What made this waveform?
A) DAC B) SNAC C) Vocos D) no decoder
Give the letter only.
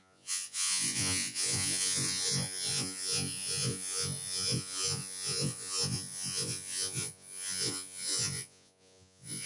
C